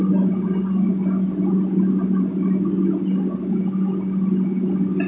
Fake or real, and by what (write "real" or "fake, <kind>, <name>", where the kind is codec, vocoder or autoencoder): real